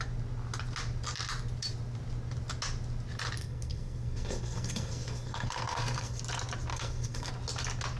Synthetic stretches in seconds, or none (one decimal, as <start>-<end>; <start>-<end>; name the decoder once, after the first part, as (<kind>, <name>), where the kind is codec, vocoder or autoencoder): 3.4-6.2 (codec, SNAC); 6.7-7.3